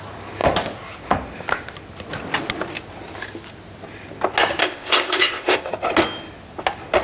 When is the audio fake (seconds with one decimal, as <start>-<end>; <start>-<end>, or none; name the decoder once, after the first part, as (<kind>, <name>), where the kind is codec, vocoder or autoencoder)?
4.6-5.7 (codec, ZipCodec)